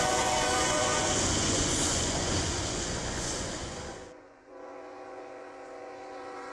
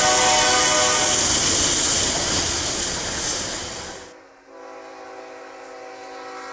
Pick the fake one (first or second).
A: first